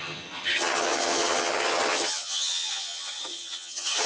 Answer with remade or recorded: remade